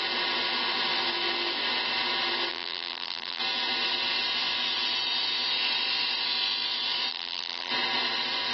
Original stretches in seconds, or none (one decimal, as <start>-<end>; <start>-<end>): 0.0-2.5; 3.4-7.1; 7.7-8.5